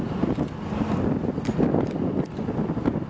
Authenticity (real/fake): real